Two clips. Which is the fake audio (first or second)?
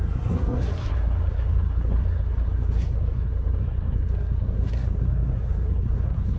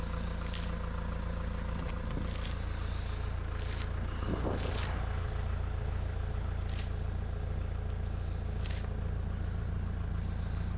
first